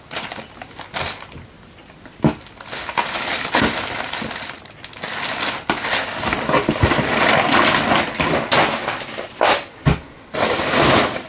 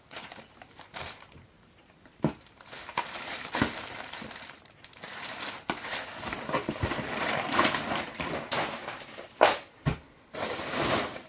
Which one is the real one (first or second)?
first